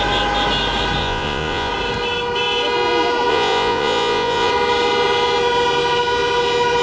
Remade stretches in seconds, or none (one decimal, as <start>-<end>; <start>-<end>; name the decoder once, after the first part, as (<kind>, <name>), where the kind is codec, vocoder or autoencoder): 1.0-1.7 (vocoder, Vocos); 3.3-4.5